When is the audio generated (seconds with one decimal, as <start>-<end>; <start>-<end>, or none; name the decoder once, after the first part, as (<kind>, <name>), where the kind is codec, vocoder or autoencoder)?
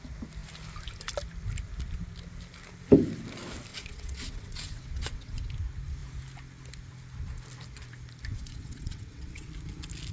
3.7-5.5 (vocoder, WaveNeXt); 8.3-9.5